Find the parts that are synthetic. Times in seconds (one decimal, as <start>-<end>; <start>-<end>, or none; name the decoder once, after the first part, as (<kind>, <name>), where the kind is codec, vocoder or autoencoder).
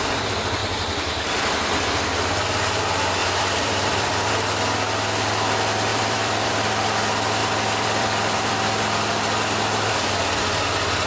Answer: 3.2-4.3 (vocoder, BigVGAN v2); 5.9-6.7; 7.4-9.9